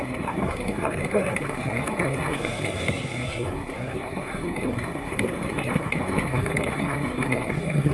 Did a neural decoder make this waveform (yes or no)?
yes